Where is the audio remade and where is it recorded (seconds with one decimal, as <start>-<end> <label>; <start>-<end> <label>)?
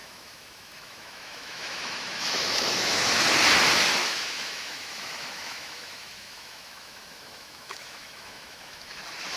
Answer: 0.0-3.2 remade; 3.2-4.0 recorded; 4.0-9.0 remade; 9.0-9.4 recorded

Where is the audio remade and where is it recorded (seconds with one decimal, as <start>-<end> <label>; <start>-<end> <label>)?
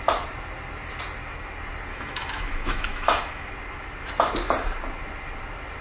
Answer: 0.0-1.9 recorded; 1.9-3.5 remade; 3.5-5.8 recorded